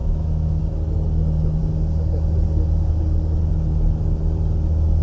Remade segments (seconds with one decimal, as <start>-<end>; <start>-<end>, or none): 0.0-0.6